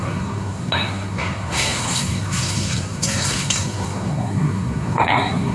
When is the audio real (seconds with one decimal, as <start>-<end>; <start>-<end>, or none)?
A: none